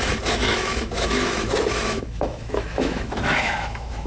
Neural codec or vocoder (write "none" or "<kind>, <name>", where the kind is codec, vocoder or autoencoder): autoencoder, DAC-VAE